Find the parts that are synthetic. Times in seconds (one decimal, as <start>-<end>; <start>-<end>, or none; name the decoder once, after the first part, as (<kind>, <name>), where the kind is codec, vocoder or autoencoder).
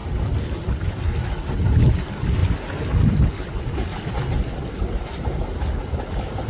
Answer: none